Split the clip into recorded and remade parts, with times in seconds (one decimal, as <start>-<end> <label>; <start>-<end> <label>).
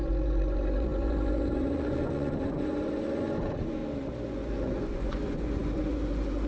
0.0-3.8 remade; 3.8-4.3 recorded; 4.3-6.5 remade